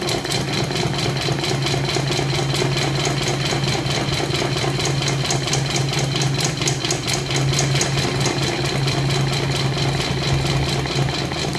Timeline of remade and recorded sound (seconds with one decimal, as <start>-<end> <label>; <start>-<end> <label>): 0.0-11.6 recorded